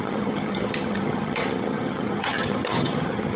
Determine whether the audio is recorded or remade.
remade